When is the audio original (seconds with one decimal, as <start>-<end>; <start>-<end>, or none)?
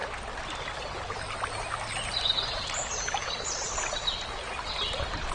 0.0-5.3